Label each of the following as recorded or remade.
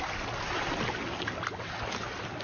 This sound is recorded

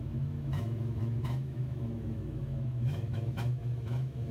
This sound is remade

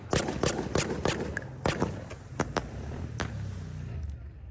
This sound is recorded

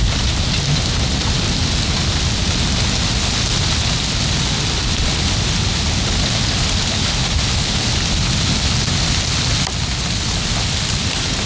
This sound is recorded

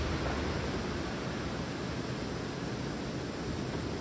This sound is recorded